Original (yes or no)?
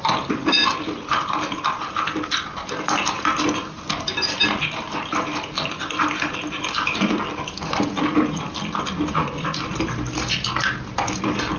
yes